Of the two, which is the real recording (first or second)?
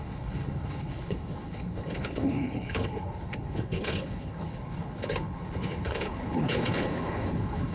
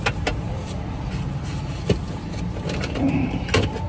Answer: second